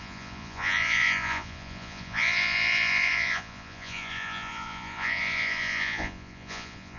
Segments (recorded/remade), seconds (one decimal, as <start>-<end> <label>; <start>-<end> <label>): 0.0-7.0 remade